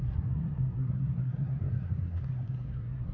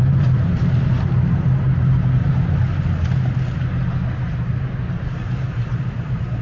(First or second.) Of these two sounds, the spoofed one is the first